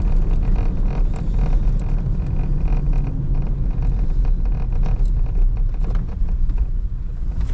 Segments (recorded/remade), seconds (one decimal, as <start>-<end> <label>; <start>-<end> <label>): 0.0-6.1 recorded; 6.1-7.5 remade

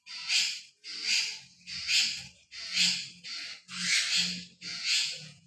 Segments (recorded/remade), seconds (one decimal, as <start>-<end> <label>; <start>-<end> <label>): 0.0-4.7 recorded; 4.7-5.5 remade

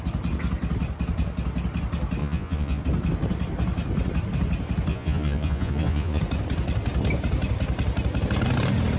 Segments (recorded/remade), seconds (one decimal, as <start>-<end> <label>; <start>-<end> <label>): 0.0-2.2 recorded; 2.2-2.8 remade; 2.8-4.9 recorded; 4.9-6.2 remade; 6.2-9.0 recorded

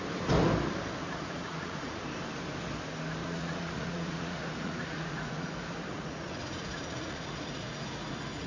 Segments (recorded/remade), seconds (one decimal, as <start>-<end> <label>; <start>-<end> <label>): 0.0-1.0 recorded; 1.0-2.0 remade; 2.0-3.2 recorded; 3.2-5.5 remade; 5.5-5.9 recorded; 5.9-8.5 remade